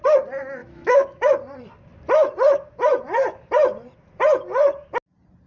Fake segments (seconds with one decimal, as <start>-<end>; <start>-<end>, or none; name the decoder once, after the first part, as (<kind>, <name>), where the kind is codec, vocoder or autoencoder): 0.6-1.3 (autoencoder, DAC-VAE)